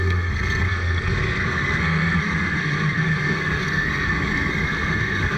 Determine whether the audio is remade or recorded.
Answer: remade